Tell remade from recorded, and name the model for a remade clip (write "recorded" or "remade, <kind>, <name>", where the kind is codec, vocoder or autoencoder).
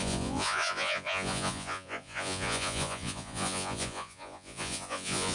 remade, vocoder, Vocos